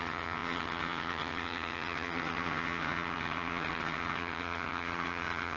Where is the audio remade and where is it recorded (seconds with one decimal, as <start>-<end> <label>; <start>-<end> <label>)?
0.0-5.6 remade